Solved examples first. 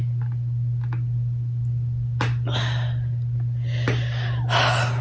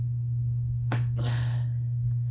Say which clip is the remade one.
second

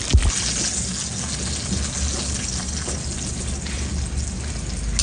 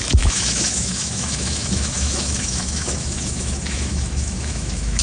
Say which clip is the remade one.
second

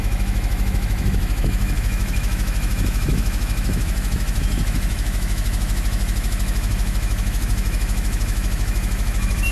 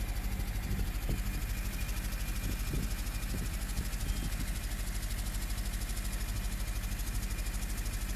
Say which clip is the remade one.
first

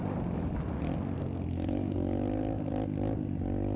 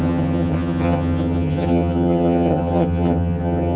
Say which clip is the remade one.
second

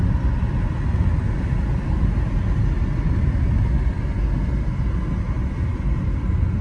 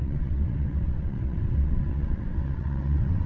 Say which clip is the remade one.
second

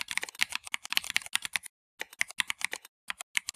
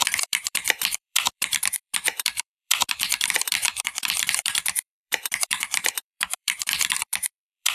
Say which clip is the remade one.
second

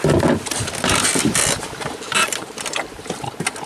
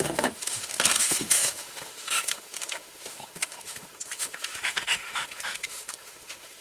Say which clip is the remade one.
second